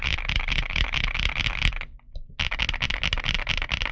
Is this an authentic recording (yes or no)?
yes